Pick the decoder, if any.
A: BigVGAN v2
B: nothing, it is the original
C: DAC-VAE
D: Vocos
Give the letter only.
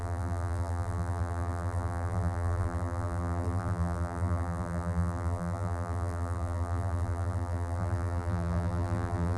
A